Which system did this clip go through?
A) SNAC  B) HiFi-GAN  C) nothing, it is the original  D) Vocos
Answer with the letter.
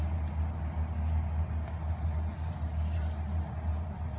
C